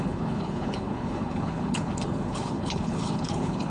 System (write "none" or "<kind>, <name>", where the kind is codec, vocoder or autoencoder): codec, HILCodec